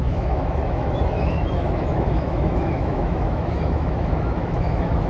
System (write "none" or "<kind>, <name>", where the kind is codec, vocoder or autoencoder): autoencoder, DAC-VAE